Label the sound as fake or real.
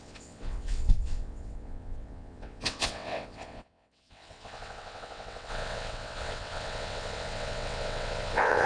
fake